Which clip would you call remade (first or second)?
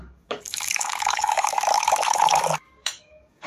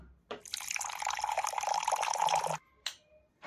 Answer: first